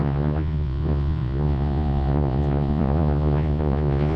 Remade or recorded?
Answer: remade